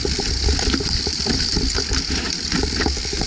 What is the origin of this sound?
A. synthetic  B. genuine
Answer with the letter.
B